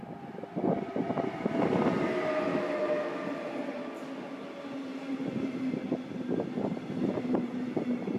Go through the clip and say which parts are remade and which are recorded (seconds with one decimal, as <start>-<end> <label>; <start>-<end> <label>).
0.0-2.5 recorded; 2.5-3.2 remade; 3.2-8.2 recorded